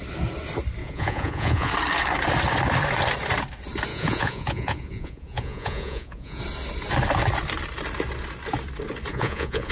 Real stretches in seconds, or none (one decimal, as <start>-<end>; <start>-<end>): 0.0-0.8; 1.7-3.9; 6.4-9.1